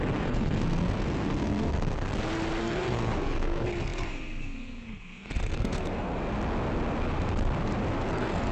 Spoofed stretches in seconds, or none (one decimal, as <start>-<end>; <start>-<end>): 0.0-2.1; 2.6-6.1; 8.1-8.5